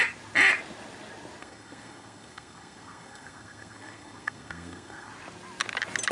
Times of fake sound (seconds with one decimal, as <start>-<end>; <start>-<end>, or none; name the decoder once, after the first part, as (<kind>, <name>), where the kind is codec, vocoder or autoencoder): 1.4-5.1 (codec, SNAC)